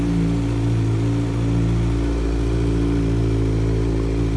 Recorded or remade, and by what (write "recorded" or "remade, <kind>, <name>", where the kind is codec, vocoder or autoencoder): recorded